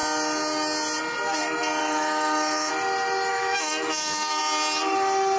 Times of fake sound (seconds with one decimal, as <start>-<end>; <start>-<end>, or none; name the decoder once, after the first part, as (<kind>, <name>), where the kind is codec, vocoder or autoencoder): 1.8-2.7 (autoencoder, DAC-VAE); 3.3-4.4